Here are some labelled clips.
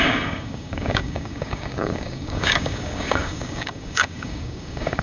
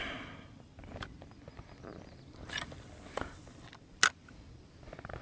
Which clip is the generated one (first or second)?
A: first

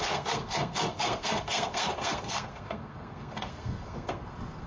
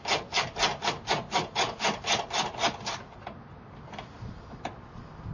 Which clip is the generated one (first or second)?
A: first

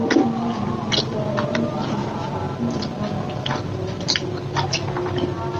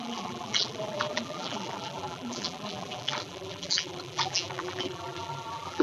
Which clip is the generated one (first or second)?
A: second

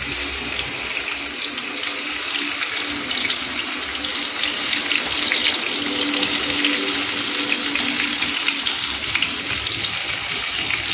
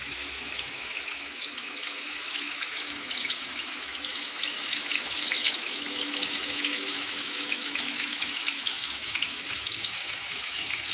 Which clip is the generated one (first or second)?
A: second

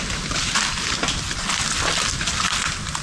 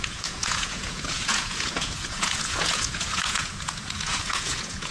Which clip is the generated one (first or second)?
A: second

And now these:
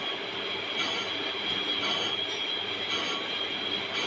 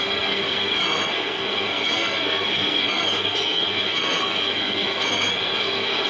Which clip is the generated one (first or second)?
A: second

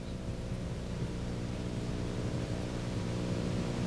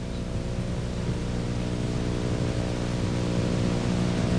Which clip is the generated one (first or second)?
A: first